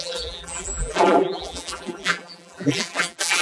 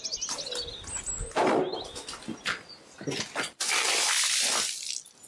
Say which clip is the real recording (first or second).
second